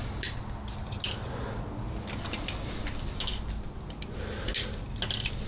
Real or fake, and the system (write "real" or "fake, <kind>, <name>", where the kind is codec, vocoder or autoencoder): real